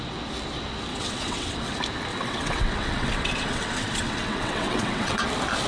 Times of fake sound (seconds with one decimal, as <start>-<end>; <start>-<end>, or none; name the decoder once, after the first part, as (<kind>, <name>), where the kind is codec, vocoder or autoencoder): 0.9-1.7 (vocoder, WaveNeXt); 2.1-5.2